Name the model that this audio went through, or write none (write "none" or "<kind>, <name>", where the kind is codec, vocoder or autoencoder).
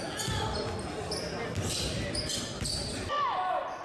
none